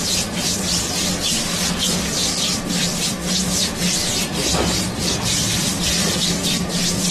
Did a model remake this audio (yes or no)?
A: yes